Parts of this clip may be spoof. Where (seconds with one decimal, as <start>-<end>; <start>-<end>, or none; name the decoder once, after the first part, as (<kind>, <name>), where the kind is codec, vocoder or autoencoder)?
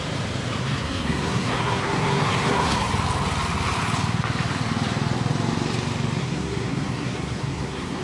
0.6-2.9 (codec, SNAC); 6.2-8.0